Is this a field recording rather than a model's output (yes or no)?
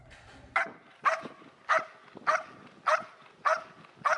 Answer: yes